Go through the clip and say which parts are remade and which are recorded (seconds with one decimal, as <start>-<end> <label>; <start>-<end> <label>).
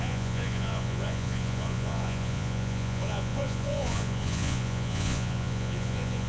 0.0-6.3 remade